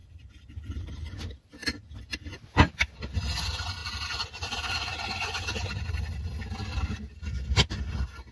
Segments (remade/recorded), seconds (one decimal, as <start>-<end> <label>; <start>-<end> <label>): 0.0-1.1 remade; 1.1-3.8 recorded; 3.8-6.3 remade; 6.3-8.3 recorded